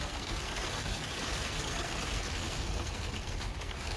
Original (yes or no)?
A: no